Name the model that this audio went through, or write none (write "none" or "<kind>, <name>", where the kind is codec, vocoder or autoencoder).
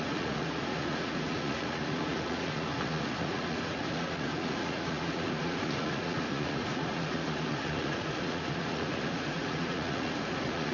vocoder, Vocos